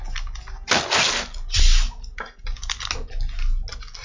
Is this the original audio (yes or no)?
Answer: yes